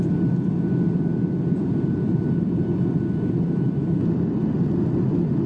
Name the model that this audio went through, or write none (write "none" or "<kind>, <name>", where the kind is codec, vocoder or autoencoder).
vocoder, BigVGAN v2